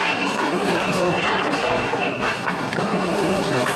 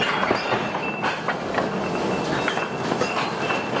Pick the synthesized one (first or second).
first